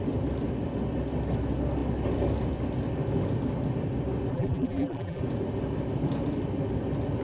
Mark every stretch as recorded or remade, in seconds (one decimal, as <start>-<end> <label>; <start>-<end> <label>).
0.0-4.3 recorded; 4.3-5.2 remade; 5.2-7.2 recorded